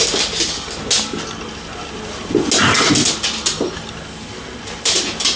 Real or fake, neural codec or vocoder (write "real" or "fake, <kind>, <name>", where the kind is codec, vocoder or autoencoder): real